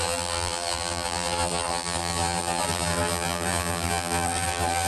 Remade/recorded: remade